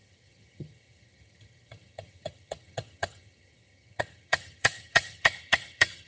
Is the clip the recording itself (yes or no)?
no